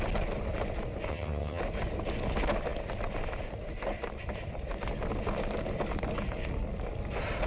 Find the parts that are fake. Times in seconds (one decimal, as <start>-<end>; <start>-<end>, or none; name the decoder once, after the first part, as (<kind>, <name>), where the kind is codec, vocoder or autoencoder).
1.1-1.6 (vocoder, HiFi-GAN)